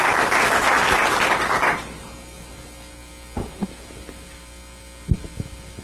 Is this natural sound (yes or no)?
yes